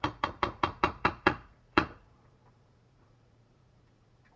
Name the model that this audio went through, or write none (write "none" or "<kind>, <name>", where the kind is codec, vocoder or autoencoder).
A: vocoder, Vocos